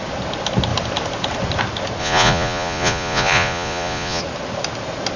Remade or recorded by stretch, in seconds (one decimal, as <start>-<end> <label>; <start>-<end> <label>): 0.0-2.0 recorded; 2.0-4.2 remade; 4.2-5.2 recorded